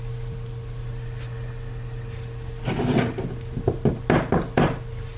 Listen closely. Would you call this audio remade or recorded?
recorded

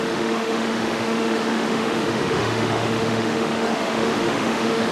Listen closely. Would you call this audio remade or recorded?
remade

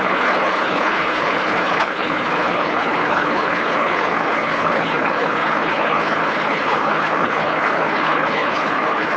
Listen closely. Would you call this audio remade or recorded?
remade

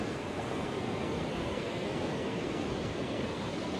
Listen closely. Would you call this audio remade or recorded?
remade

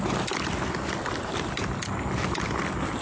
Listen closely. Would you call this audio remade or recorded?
recorded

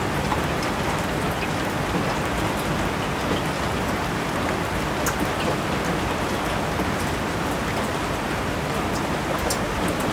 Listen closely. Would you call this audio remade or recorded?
recorded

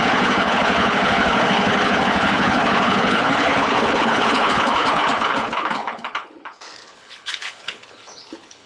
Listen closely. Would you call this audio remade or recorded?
remade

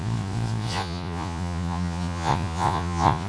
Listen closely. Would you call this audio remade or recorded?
remade